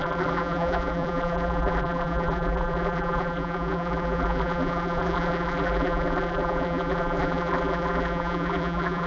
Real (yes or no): no